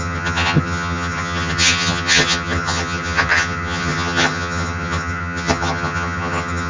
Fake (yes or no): yes